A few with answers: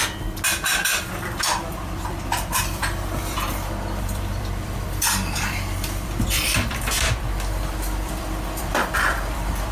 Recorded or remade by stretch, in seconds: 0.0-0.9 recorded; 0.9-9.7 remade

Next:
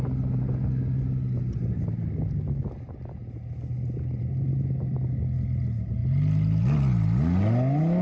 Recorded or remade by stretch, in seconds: 0.0-8.0 recorded

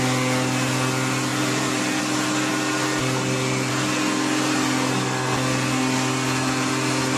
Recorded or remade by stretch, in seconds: 0.0-1.3 recorded; 1.3-2.0 remade; 2.0-7.2 recorded

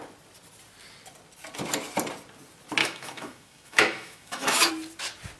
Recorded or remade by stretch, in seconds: 0.0-2.8 recorded; 2.8-4.7 remade; 4.7-5.4 recorded

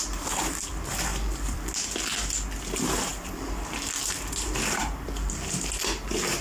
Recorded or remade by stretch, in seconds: 0.0-1.1 recorded; 1.1-1.7 remade; 1.7-3.1 recorded; 3.1-4.0 remade; 4.0-4.8 recorded; 4.8-5.8 remade; 5.8-6.4 recorded